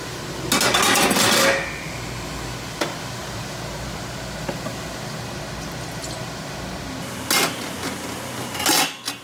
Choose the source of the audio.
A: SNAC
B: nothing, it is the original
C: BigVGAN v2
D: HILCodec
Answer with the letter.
B